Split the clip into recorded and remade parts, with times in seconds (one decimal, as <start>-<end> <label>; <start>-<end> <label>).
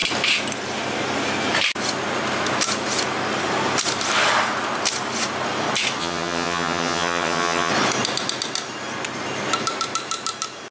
0.0-6.0 recorded; 6.0-7.7 remade; 7.7-10.7 recorded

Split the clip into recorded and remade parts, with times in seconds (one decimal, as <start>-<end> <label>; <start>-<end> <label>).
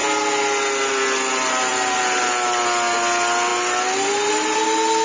0.0-5.0 recorded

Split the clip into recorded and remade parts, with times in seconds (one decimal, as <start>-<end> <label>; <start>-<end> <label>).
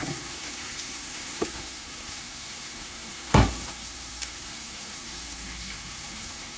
0.0-6.6 remade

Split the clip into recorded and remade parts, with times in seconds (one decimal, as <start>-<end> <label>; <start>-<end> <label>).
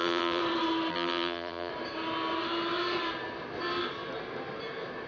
0.0-0.4 remade; 0.4-0.9 recorded; 0.9-1.7 remade; 1.7-5.1 recorded